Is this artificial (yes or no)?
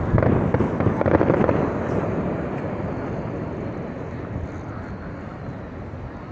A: no